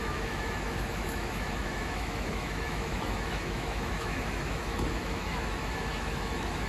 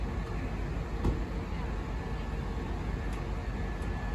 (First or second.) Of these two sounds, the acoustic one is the second